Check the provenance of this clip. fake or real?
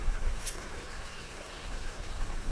fake